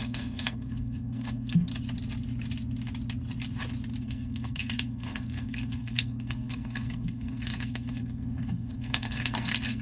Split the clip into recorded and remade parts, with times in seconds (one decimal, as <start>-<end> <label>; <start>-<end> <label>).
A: 0.0-1.7 remade; 1.7-4.0 recorded; 4.0-9.8 remade